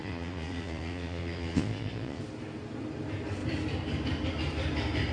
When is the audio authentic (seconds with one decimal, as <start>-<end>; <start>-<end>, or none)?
2.2-5.1